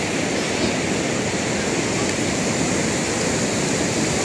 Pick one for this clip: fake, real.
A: real